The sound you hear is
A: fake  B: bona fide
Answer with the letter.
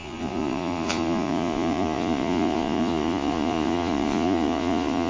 A